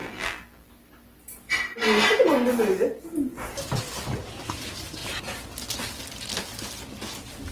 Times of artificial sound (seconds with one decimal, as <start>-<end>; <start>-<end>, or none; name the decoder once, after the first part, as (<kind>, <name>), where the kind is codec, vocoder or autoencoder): 0.0-0.7 (vocoder, BigVGAN v2)